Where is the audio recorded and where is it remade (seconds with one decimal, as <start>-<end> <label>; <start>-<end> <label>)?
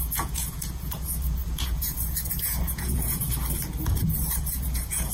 0.0-3.2 remade; 3.2-4.2 recorded; 4.2-5.1 remade